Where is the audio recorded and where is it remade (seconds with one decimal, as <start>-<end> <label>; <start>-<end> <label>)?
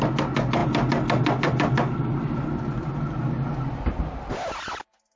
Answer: 0.0-5.2 recorded